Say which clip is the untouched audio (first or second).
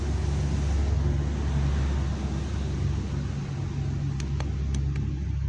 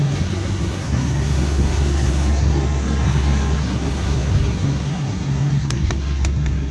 first